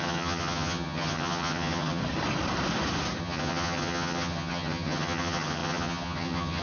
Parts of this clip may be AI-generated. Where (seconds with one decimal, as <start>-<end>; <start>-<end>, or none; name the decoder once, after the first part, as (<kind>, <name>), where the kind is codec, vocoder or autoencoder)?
0.0-2.0 (vocoder, HiFi-GAN); 3.2-6.6